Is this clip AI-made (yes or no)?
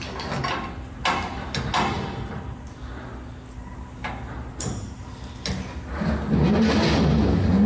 no